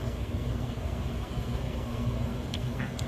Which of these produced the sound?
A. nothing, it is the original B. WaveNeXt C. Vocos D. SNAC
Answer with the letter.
D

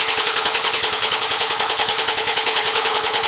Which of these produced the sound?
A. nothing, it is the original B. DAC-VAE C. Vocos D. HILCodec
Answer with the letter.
D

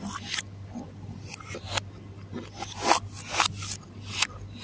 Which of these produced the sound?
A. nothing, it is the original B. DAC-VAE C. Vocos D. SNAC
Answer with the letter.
A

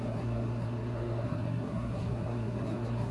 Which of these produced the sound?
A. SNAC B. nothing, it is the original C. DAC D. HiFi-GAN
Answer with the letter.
A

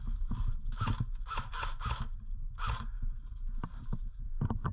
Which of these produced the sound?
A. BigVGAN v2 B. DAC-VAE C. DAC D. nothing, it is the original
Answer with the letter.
D